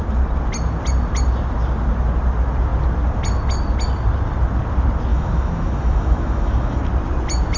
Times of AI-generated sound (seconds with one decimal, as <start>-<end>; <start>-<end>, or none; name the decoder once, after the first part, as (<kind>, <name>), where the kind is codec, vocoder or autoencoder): 5.1-6.8 (autoencoder, DAC-VAE)